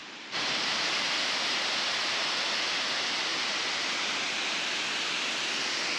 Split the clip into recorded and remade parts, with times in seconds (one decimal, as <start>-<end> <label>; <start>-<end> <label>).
0.0-2.3 remade; 2.3-6.0 recorded

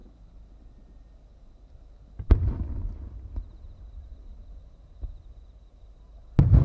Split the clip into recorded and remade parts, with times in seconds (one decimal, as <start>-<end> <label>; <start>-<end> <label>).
0.0-6.6 recorded

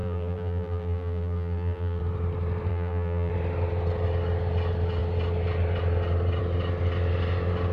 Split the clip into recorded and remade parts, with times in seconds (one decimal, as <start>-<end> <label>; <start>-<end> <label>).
0.0-2.0 remade; 2.0-2.7 recorded; 2.7-3.3 remade; 3.3-7.7 recorded

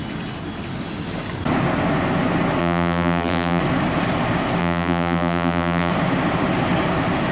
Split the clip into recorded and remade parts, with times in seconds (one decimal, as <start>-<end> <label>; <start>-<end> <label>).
0.0-2.6 recorded; 2.6-3.6 remade; 3.6-4.6 recorded; 4.6-5.9 remade; 5.9-7.3 recorded